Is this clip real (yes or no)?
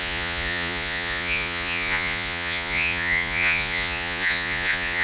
no